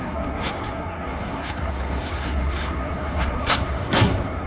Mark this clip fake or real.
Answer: fake